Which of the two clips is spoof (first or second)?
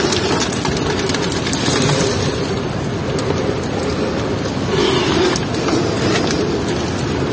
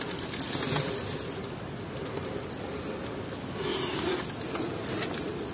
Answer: first